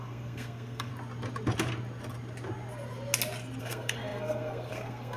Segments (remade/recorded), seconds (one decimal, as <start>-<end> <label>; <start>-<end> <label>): 0.0-0.9 remade; 0.9-3.6 recorded; 3.6-5.2 remade